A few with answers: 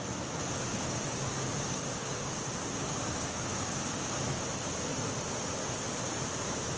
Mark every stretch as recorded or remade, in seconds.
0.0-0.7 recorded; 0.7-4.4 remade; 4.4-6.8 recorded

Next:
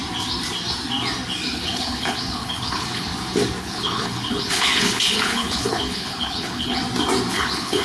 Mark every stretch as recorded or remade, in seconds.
0.0-1.5 recorded; 1.5-3.1 remade; 3.1-3.6 recorded; 3.6-6.8 remade; 6.8-7.3 recorded; 7.3-7.8 remade

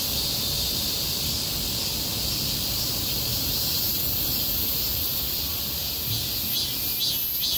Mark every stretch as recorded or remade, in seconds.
0.0-3.3 recorded; 3.3-5.4 remade; 5.4-7.6 recorded

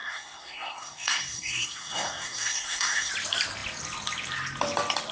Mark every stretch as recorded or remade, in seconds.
0.0-3.1 remade; 3.1-5.1 recorded

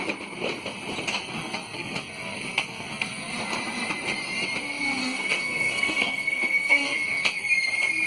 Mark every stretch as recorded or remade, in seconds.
0.0-1.2 recorded; 1.2-3.3 remade; 3.3-5.0 recorded; 5.0-7.5 remade; 7.5-8.1 recorded